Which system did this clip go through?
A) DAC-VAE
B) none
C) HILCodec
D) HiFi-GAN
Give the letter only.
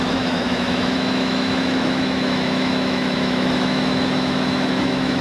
A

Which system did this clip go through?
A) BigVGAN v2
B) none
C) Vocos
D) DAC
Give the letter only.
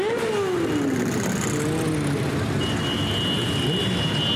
B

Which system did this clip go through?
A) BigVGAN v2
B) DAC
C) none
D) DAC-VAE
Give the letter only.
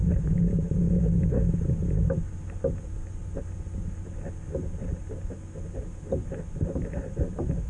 C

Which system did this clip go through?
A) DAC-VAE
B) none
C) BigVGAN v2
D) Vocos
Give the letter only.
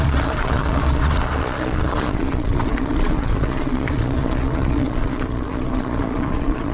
D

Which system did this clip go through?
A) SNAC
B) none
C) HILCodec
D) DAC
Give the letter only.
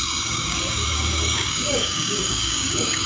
D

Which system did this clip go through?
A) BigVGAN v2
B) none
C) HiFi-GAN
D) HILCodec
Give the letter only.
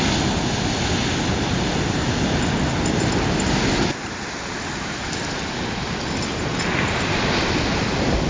B